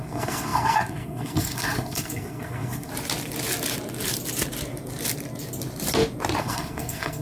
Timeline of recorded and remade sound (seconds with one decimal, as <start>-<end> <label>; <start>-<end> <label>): 0.0-2.9 remade; 2.9-6.4 recorded; 6.4-7.2 remade

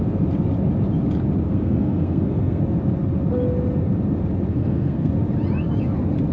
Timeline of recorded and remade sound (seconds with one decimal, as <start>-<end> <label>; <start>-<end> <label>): 0.0-1.5 recorded; 1.5-2.6 remade; 2.6-4.5 recorded; 4.5-5.1 remade; 5.1-6.3 recorded